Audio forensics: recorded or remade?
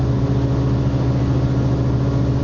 recorded